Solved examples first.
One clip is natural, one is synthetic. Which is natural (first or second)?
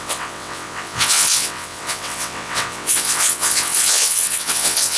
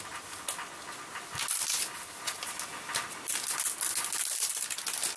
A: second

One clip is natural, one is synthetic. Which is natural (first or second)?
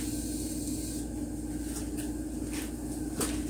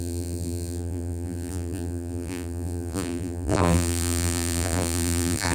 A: first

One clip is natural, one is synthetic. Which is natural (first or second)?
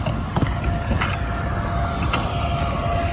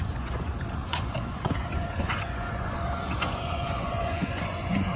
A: first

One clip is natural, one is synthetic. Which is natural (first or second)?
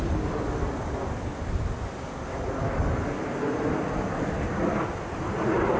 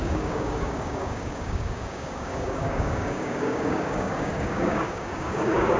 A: first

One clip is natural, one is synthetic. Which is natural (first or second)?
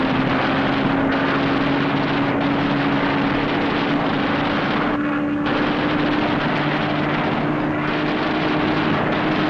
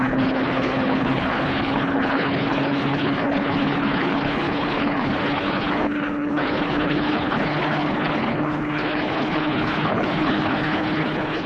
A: first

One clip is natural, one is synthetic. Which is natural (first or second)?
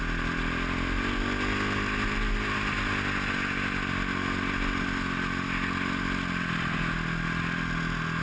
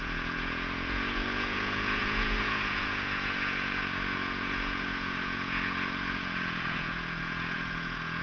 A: first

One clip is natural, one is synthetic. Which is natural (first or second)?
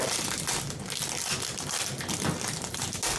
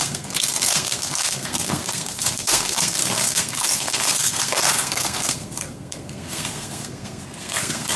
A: first